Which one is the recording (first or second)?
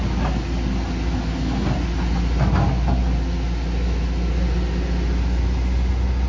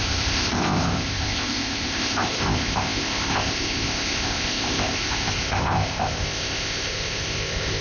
first